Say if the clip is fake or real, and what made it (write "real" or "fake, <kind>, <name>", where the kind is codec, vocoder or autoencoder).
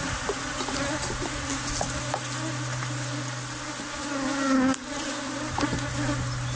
real